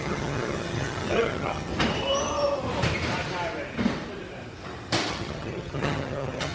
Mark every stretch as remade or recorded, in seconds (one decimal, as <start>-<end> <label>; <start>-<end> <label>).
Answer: 0.0-1.7 remade; 1.7-5.1 recorded; 5.1-6.5 remade